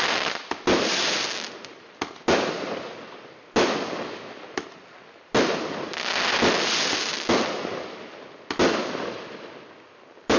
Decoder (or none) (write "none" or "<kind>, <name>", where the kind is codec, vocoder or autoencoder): none